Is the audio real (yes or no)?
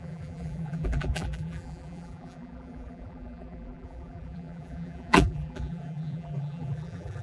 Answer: no